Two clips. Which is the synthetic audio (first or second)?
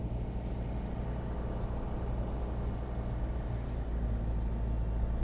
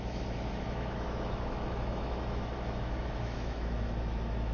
second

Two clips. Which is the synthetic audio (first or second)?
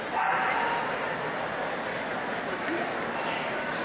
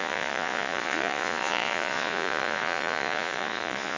second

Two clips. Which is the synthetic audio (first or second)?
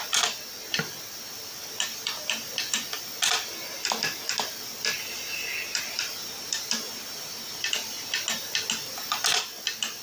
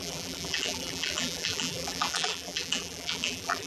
second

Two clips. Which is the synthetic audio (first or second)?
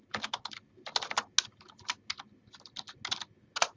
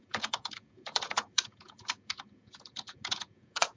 second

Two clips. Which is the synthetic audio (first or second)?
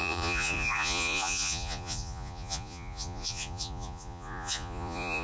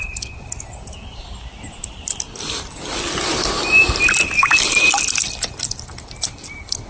first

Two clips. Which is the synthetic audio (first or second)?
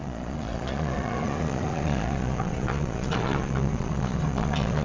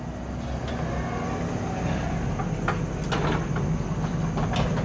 first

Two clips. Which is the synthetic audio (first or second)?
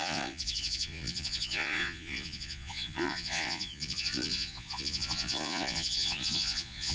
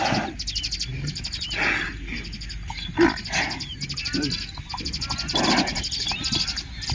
first